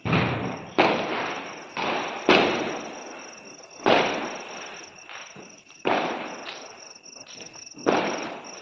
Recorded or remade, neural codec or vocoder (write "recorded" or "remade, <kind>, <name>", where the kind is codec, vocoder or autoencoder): recorded